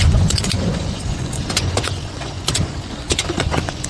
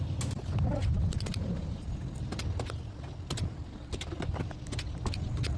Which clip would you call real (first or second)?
second